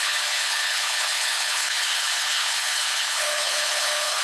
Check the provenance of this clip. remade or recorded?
remade